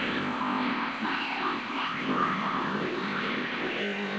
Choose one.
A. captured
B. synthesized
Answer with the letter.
B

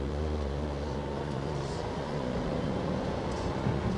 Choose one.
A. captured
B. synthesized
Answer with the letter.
B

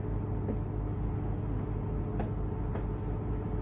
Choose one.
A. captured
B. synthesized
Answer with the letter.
A